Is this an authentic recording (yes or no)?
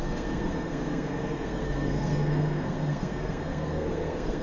no